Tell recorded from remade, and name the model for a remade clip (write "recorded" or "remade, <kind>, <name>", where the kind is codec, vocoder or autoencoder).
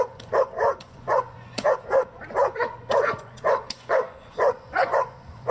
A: remade, vocoder, Vocos